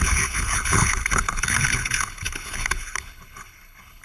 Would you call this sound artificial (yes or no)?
yes